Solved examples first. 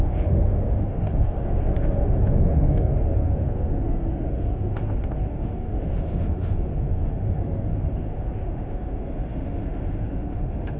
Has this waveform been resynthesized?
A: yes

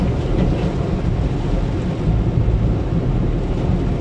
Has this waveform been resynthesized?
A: no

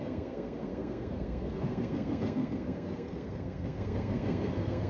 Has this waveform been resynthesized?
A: yes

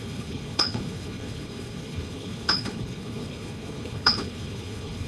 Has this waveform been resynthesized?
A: yes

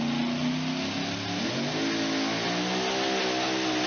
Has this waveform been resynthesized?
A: no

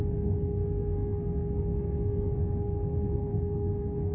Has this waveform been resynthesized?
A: yes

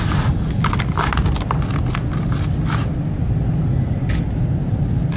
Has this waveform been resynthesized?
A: no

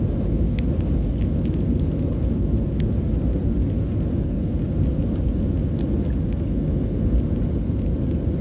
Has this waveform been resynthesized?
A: no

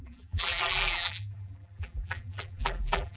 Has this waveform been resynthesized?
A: yes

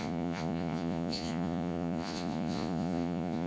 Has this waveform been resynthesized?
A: yes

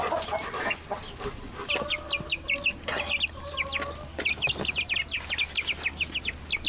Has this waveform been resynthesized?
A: no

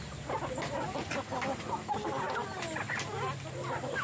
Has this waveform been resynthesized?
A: no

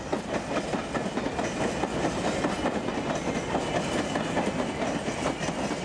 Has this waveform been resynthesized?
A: no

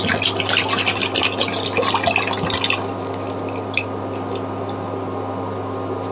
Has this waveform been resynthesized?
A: no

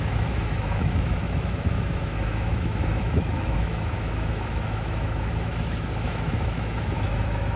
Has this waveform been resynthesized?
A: yes